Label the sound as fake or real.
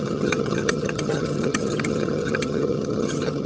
fake